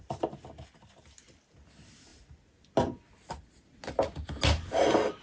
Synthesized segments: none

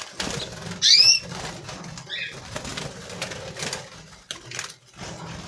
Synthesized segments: none

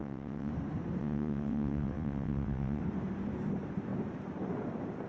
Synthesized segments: 0.0-0.5 (vocoder, WaveNeXt); 1.0-2.8

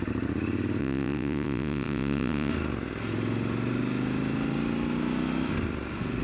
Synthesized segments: 0.8-2.5 (vocoder, WaveNeXt)

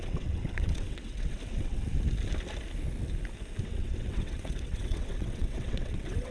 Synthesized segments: 0.0-1.9 (vocoder, WaveNeXt); 3.6-6.3

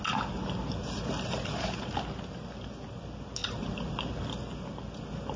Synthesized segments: none

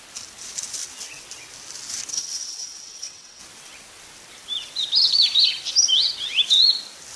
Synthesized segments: 2.1-3.4 (vocoder, WaveNeXt)